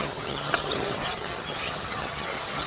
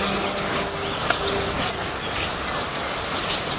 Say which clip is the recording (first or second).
second